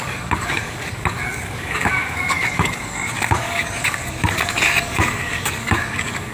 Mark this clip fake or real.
fake